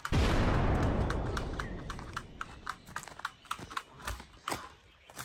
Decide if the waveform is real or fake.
real